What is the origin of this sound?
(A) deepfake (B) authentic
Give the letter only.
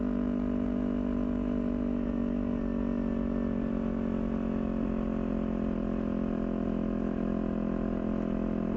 B